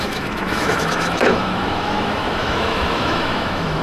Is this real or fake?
fake